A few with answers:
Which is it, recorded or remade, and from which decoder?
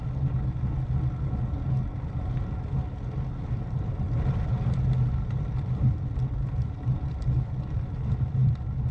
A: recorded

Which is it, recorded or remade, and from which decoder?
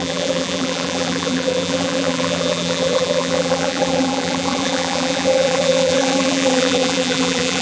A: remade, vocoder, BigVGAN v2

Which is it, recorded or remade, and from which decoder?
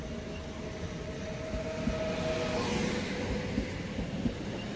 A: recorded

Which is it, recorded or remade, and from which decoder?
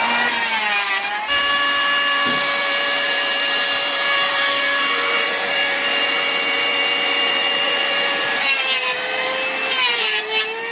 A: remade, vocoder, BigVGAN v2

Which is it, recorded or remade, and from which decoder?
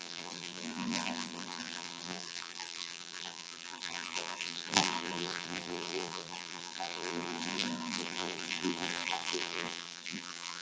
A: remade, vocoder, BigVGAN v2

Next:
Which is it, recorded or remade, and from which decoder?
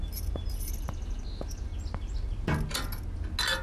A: recorded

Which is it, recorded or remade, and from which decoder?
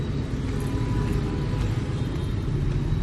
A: recorded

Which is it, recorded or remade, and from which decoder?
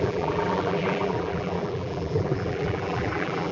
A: remade, vocoder, BigVGAN v2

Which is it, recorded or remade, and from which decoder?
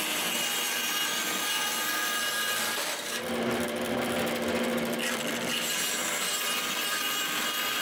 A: remade, vocoder, BigVGAN v2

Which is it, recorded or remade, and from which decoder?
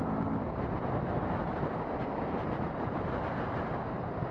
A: remade, vocoder, BigVGAN v2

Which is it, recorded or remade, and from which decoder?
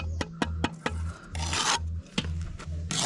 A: recorded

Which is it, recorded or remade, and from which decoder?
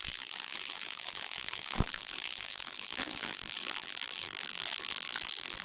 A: remade, vocoder, BigVGAN v2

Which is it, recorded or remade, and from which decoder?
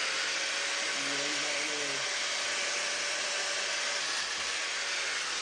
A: recorded